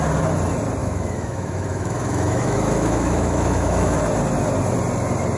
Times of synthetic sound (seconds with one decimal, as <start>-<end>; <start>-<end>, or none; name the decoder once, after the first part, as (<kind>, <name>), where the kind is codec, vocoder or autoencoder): 0.8-4.0 (autoencoder, DAC-VAE)